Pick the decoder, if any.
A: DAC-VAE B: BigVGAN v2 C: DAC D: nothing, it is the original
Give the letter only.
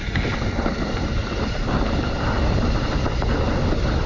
D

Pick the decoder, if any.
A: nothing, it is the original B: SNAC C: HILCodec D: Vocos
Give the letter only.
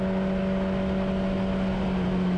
A